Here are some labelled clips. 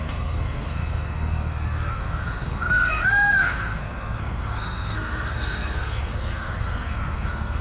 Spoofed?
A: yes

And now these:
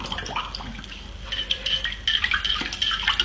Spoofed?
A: no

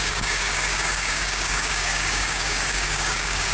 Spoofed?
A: yes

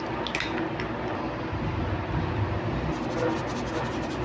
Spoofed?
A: no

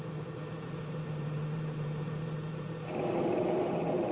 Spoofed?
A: yes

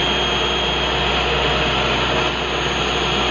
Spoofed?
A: no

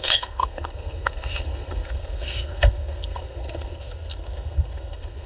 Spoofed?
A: yes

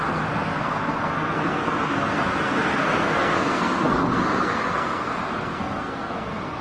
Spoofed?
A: yes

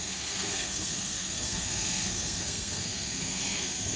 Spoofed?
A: yes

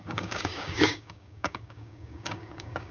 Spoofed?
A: yes